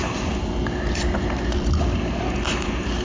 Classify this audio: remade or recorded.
recorded